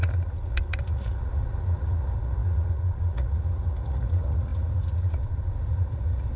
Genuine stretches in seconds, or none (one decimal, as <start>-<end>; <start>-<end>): none